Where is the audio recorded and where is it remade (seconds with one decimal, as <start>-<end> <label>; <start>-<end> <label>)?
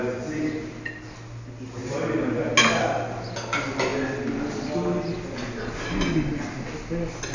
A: 0.0-1.8 recorded; 1.8-2.3 remade; 2.3-7.3 recorded